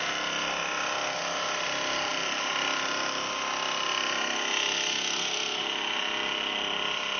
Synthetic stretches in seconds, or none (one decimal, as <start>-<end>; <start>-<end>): none